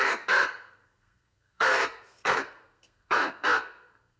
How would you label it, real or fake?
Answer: fake